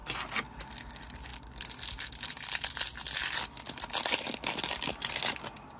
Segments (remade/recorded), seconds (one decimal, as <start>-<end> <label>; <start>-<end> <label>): 0.0-5.8 recorded